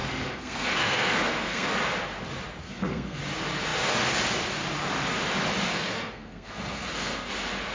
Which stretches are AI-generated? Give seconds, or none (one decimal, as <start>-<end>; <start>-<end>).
0.0-1.7; 2.6-3.2; 5.7-7.3